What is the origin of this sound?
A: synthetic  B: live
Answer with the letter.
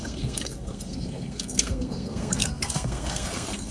A